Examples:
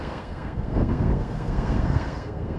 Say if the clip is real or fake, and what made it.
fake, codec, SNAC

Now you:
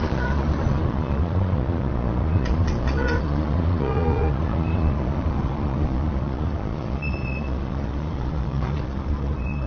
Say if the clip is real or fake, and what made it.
fake, vocoder, Vocos